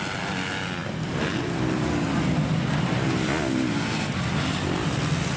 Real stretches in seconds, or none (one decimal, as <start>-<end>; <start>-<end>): 0.0-5.4